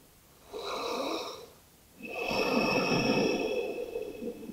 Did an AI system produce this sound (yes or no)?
no